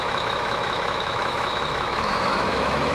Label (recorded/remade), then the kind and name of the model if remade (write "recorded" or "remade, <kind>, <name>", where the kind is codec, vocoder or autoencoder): remade, autoencoder, DAC-VAE